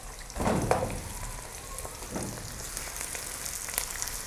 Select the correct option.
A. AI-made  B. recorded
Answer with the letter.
B